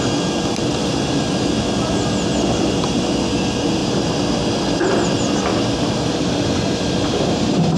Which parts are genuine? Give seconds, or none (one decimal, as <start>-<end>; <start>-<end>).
0.0-0.7; 1.2-3.8; 4.3-5.5